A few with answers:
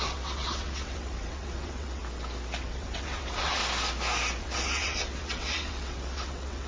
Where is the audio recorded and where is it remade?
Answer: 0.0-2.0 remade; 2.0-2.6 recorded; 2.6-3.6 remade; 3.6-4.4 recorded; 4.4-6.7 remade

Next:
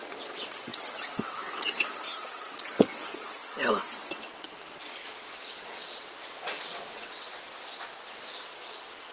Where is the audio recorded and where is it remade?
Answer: 0.0-7.3 remade; 7.3-8.6 recorded; 8.6-9.1 remade